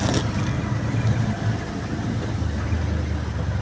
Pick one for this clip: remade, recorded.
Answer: recorded